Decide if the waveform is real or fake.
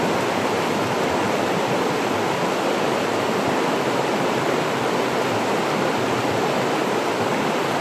real